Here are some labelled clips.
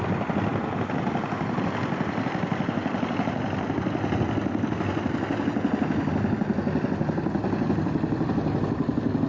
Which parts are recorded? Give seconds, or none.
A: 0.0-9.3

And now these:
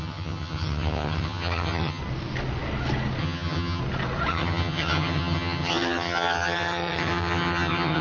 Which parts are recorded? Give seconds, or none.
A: 2.0-3.2; 3.8-4.3

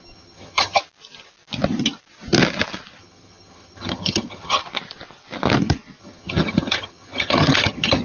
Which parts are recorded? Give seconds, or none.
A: 0.8-3.0; 4.6-6.0